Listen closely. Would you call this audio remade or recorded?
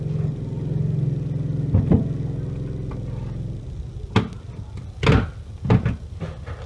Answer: recorded